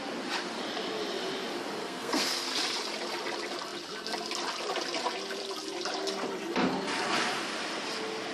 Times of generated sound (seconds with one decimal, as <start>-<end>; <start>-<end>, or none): 1.8-2.4